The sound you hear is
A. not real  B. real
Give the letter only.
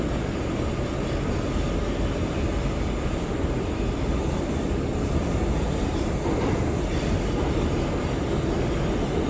B